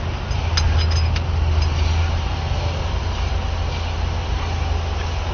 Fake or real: real